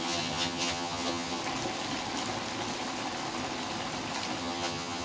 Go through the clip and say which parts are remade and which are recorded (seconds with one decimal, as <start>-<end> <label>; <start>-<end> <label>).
0.0-1.4 remade; 1.4-4.4 recorded; 4.4-5.0 remade